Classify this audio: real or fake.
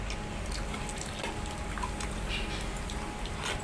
real